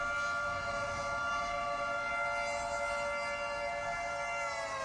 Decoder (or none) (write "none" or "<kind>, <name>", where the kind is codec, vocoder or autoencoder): none